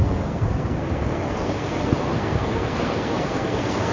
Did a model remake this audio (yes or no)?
yes